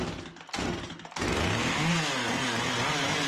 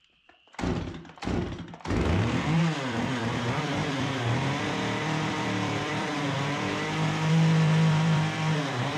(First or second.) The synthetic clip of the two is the second